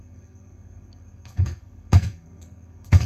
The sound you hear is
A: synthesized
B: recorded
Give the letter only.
A